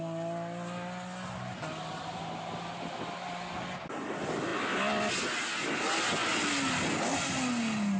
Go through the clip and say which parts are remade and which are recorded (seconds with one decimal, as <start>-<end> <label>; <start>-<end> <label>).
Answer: 0.0-8.0 recorded